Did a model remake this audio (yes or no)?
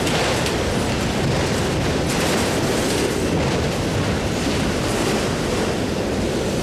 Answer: no